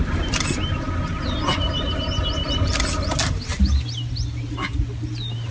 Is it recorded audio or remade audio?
recorded